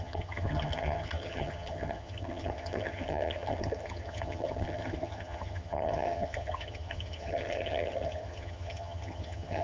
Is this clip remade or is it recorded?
remade